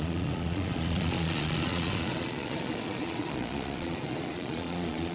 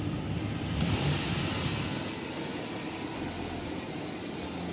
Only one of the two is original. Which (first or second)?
second